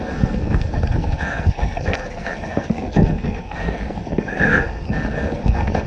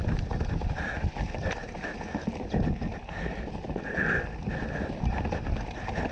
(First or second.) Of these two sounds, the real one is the second